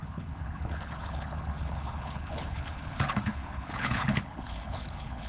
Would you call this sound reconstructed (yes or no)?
yes